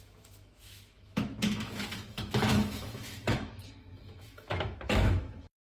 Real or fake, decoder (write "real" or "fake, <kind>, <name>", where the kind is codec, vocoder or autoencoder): fake, autoencoder, DAC-VAE